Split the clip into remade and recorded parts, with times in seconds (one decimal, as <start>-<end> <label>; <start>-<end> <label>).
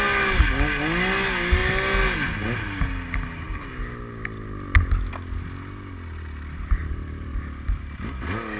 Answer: 0.0-6.8 recorded; 6.8-7.3 remade; 7.3-8.6 recorded